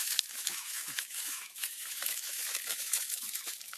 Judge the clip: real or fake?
fake